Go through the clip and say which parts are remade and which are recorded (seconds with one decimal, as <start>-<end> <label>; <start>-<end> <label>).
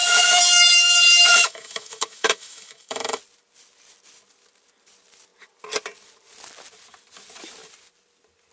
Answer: 0.0-3.2 remade; 3.2-8.5 recorded